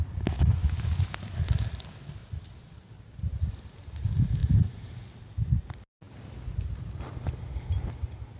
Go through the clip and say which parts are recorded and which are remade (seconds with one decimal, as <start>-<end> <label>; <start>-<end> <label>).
0.0-2.2 recorded; 2.2-3.5 remade; 3.5-4.4 recorded; 4.4-4.9 remade; 4.9-8.4 recorded